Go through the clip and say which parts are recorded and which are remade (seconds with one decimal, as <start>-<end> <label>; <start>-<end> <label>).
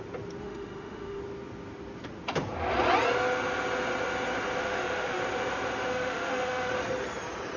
0.0-0.4 recorded; 0.4-1.2 remade; 1.2-4.6 recorded; 4.6-5.2 remade; 5.2-5.9 recorded; 5.9-6.7 remade; 6.7-7.6 recorded